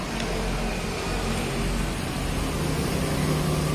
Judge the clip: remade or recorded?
recorded